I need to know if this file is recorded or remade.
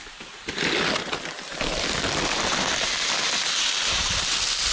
recorded